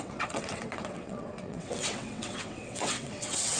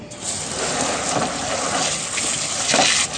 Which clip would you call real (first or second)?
second